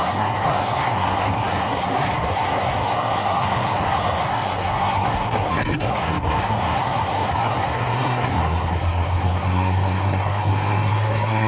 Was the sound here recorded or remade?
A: remade